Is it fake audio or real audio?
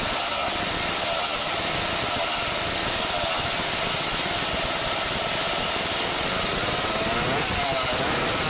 real